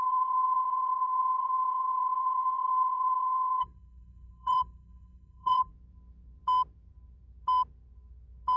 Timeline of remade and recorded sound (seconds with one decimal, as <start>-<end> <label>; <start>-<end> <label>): 0.0-5.7 remade; 5.7-8.6 recorded